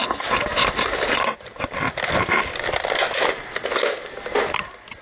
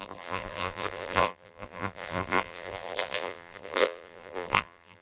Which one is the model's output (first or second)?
second